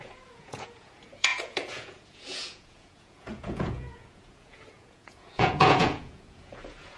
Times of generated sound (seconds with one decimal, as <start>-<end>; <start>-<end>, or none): 0.0-7.0